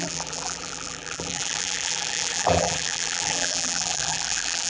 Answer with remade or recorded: remade